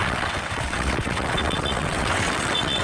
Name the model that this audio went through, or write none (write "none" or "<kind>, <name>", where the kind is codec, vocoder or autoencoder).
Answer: vocoder, WaveNeXt